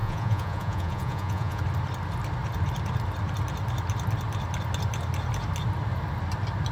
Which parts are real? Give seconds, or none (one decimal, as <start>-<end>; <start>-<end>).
1.6-6.7